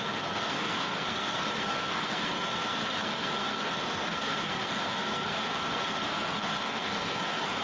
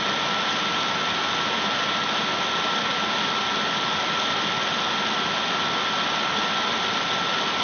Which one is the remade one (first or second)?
first